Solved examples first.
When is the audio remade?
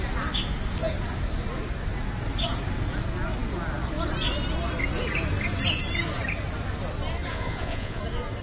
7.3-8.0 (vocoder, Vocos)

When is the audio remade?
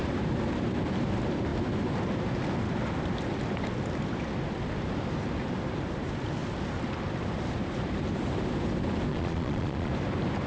9.1-9.9 (vocoder, Vocos)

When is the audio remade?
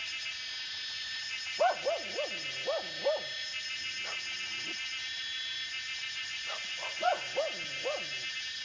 0.7-1.4 (vocoder, Vocos); 6.2-7.2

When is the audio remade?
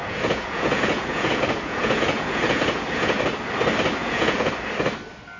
0.0-3.2 (vocoder, Vocos); 4.0-4.5